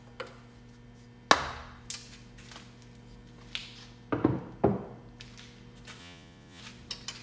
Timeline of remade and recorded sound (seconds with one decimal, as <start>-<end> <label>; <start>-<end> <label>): 0.0-6.0 recorded; 6.0-6.6 remade; 6.6-7.2 recorded